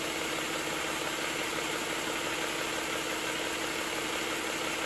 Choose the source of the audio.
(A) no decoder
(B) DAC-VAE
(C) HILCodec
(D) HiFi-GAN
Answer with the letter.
A